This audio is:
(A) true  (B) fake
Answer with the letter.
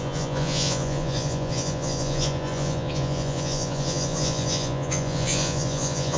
B